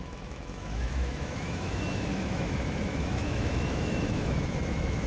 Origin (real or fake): fake